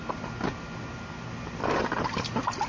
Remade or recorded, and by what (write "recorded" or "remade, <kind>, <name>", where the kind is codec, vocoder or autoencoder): recorded